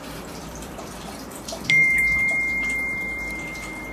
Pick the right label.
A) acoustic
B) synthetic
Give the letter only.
B